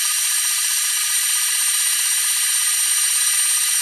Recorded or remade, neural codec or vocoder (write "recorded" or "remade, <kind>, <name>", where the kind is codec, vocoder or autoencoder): recorded